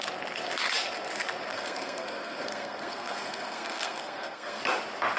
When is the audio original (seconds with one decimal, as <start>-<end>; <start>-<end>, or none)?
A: 0.0-1.5; 4.6-5.2